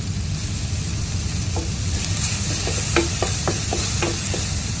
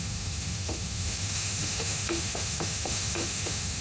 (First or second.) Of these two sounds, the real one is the first